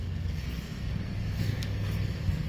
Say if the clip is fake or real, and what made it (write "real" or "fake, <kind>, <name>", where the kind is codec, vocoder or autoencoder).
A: fake, codec, SNAC